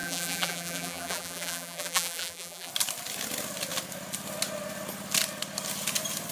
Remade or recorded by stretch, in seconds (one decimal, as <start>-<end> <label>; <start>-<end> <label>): 0.0-2.7 remade; 2.7-6.3 recorded